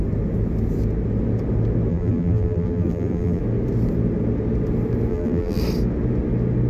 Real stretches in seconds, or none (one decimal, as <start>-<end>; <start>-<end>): 0.0-1.9; 3.4-5.1; 5.6-6.7